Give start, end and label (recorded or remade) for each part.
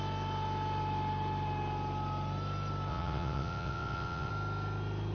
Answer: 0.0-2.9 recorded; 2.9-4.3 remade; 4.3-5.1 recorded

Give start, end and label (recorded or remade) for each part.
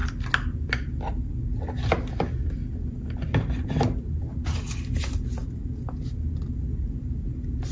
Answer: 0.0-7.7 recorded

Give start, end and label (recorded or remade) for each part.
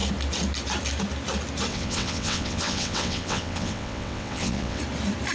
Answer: 0.0-1.7 recorded; 1.7-4.8 remade; 4.8-5.3 recorded